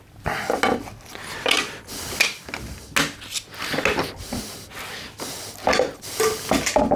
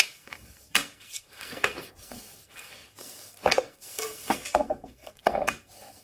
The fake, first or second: second